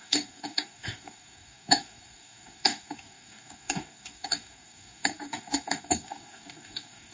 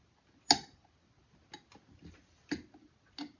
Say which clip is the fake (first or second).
first